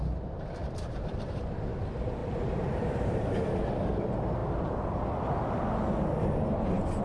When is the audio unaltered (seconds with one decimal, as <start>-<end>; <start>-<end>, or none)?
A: 0.0-0.6; 1.5-2.2; 3.2-7.0